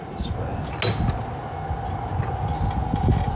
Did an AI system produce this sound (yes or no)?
no